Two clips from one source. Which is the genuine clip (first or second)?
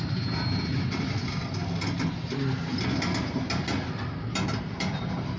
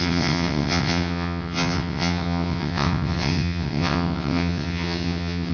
first